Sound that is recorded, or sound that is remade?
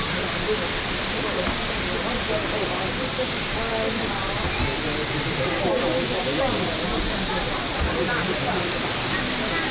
recorded